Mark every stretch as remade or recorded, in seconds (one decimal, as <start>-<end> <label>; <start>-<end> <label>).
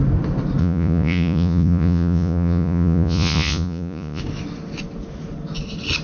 0.0-0.6 recorded; 0.6-4.2 remade; 4.2-6.0 recorded